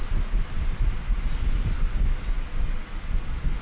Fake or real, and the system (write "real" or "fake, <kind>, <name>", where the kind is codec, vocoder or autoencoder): real